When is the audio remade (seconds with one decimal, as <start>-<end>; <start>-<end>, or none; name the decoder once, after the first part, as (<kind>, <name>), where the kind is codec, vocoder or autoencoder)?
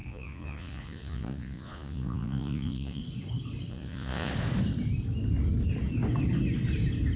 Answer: 0.0-3.0 (vocoder, Vocos); 3.7-4.3